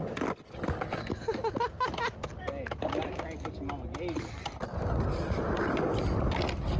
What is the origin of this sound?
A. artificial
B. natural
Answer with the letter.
B